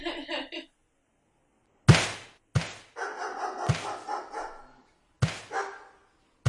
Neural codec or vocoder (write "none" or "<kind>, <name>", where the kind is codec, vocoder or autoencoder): none